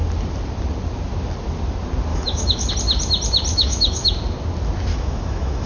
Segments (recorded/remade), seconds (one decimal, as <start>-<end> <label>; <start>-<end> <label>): 0.0-2.1 recorded; 2.1-2.7 remade; 2.7-3.5 recorded; 3.5-4.1 remade; 4.1-4.9 recorded; 4.9-5.7 remade